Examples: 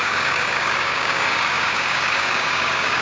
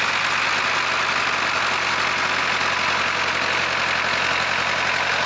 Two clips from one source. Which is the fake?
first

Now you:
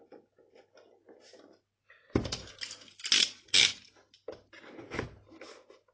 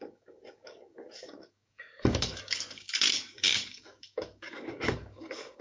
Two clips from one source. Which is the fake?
second